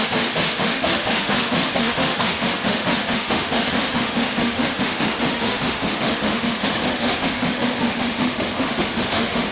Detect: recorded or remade remade